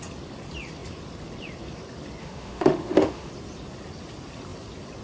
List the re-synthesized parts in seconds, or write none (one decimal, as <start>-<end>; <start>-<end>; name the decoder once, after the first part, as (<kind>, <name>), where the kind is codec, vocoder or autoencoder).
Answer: 2.2-3.3 (autoencoder, DAC-VAE)